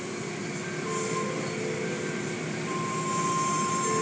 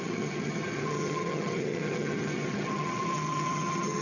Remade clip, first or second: second